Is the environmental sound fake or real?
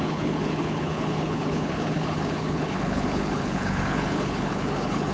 fake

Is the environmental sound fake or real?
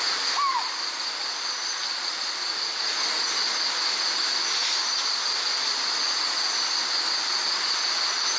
real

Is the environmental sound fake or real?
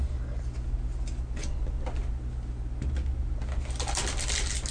real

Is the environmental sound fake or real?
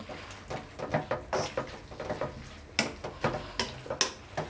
real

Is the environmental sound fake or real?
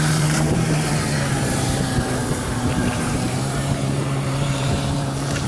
fake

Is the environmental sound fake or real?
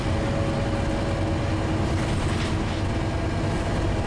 real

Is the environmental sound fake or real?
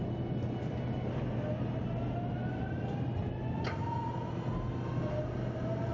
real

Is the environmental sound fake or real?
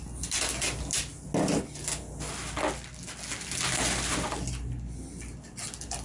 real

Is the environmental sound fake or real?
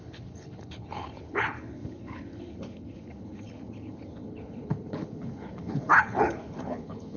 fake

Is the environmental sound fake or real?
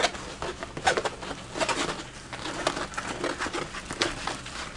real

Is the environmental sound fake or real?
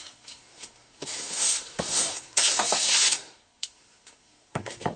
fake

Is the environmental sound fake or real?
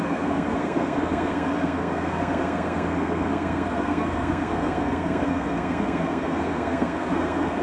fake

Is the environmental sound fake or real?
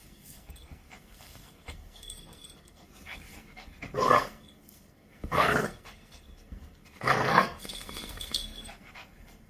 fake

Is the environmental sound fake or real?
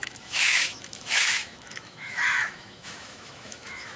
fake